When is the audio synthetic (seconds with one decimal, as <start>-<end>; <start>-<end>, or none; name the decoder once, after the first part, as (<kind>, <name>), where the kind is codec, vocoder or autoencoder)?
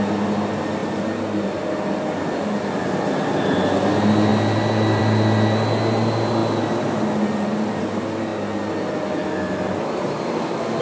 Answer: none